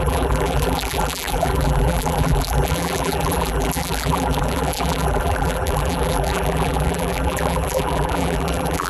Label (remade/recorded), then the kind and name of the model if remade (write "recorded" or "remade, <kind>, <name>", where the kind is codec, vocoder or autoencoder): remade, vocoder, BigVGAN v2